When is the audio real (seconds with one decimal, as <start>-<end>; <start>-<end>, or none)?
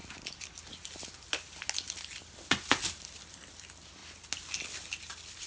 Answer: 0.0-3.3; 4.0-4.7